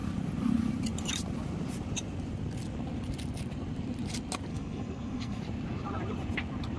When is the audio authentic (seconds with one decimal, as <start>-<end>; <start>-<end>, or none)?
0.0-4.5; 5.4-6.8